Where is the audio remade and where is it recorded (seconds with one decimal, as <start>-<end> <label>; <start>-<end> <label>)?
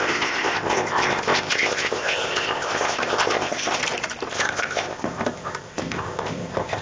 0.0-3.8 remade; 3.8-4.3 recorded; 4.3-6.8 remade